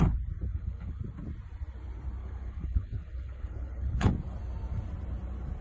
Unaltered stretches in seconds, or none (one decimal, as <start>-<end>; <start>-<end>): 0.0-0.5; 1.0-2.2; 4.1-5.6